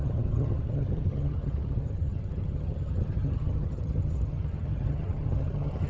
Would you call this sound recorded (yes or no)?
no